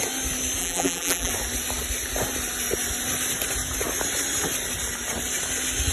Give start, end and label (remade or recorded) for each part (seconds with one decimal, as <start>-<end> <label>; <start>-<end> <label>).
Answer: 0.0-0.6 recorded; 0.6-1.3 remade; 1.3-5.9 recorded